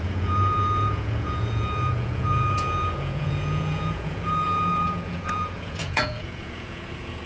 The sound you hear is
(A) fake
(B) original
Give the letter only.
A